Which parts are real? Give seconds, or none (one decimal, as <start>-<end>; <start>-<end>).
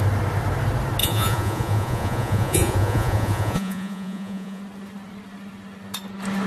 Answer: 0.0-1.0; 4.6-6.5